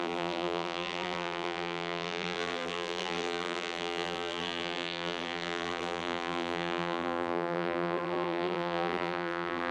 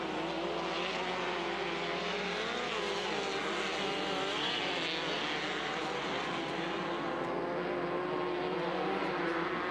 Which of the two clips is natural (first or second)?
second